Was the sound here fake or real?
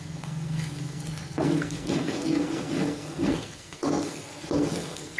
fake